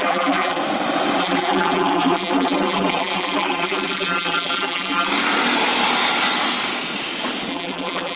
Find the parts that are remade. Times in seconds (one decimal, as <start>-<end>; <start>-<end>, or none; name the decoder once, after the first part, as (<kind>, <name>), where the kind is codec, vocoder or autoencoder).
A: 0.0-0.6 (vocoder, BigVGAN v2); 1.2-5.1; 7.5-8.2